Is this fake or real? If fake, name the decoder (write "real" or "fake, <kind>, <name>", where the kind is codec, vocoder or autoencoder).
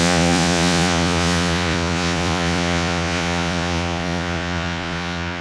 fake, vocoder, Vocos